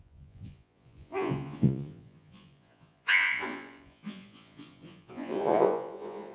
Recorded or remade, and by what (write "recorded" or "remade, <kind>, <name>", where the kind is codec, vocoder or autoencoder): remade, vocoder, Vocos